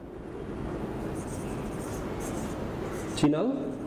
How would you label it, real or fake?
real